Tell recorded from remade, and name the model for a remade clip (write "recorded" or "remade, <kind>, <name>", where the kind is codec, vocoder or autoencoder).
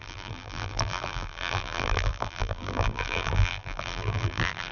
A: remade, vocoder, BigVGAN v2